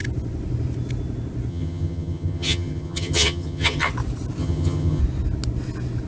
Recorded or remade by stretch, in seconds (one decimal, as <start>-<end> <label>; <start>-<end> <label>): 0.0-1.5 recorded; 1.5-3.9 remade; 3.9-4.4 recorded; 4.4-5.0 remade; 5.0-6.1 recorded